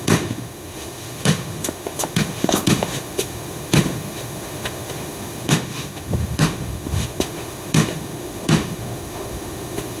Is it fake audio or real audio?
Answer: fake